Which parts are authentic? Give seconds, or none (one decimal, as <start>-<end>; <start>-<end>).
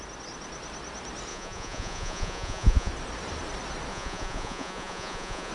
0.0-1.3; 2.9-3.9